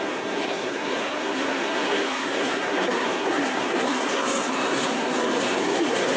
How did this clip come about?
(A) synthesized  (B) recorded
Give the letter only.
A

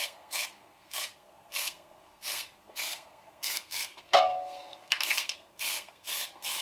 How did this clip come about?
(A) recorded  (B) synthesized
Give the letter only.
B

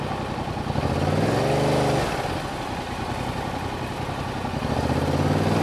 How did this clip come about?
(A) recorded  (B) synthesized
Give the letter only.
A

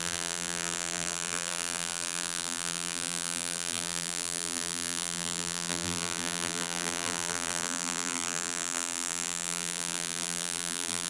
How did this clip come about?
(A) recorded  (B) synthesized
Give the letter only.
B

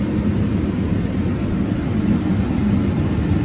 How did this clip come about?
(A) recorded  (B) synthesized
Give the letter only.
A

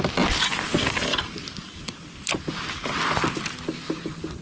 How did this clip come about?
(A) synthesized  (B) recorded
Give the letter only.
B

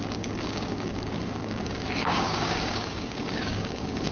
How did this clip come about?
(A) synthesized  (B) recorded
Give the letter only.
A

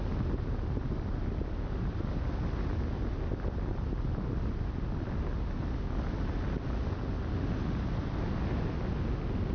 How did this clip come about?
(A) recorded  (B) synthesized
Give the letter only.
A